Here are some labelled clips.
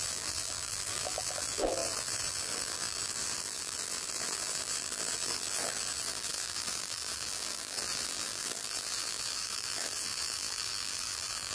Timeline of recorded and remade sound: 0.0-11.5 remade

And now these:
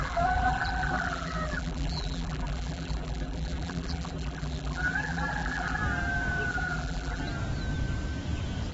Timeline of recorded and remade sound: 0.0-5.8 remade; 5.8-6.5 recorded; 6.5-7.2 remade; 7.2-8.7 recorded